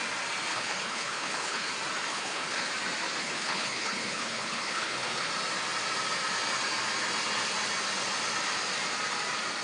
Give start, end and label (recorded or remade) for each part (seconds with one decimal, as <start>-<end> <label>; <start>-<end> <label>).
0.0-0.5 recorded; 0.5-1.7 remade; 1.7-2.1 recorded; 2.1-2.7 remade; 2.7-3.2 recorded; 3.2-5.3 remade; 5.3-9.6 recorded

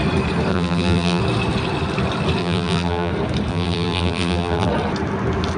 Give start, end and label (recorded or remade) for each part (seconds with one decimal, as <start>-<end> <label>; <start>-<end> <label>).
0.0-0.5 recorded; 0.5-1.2 remade; 1.2-2.4 recorded; 2.4-3.1 remade; 3.1-3.5 recorded; 3.5-4.7 remade; 4.7-5.6 recorded

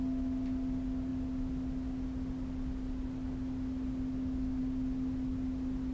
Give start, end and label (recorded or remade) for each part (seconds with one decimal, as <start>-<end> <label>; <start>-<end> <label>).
0.0-5.9 recorded

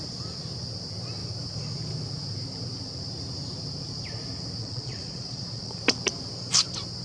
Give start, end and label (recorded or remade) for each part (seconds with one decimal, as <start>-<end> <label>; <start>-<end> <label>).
0.0-4.6 recorded; 4.6-5.8 remade; 5.8-7.0 recorded

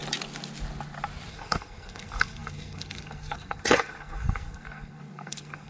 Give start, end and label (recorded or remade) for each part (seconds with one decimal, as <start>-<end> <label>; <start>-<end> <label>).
0.0-1.3 recorded; 1.3-5.7 remade

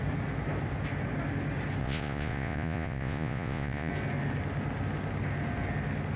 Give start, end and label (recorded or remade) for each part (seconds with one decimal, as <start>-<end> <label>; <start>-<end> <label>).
0.0-1.8 recorded; 1.8-3.9 remade; 3.9-6.2 recorded